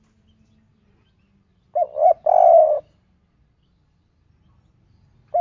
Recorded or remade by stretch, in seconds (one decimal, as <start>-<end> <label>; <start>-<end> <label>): 0.0-2.6 recorded; 2.6-4.3 remade; 4.3-5.4 recorded

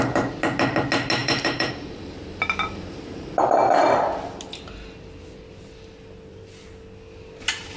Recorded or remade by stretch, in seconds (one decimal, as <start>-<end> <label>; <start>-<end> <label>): 0.0-1.2 recorded; 1.2-4.4 remade; 4.4-7.8 recorded

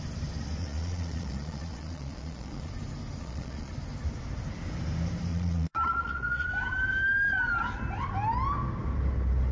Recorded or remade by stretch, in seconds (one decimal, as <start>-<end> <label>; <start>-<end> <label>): 0.0-0.6 recorded; 0.6-2.7 remade; 2.7-3.2 recorded; 3.2-3.7 remade; 3.7-5.3 recorded; 5.3-6.5 remade; 6.5-9.5 recorded